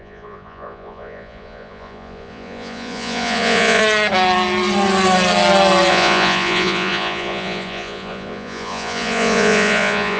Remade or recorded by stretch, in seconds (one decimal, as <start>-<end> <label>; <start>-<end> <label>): 0.0-3.8 remade; 3.8-5.9 recorded; 5.9-10.2 remade